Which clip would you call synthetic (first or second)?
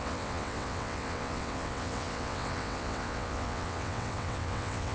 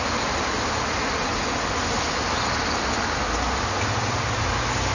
first